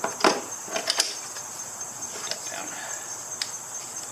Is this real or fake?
real